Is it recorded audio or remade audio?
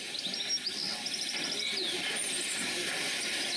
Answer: recorded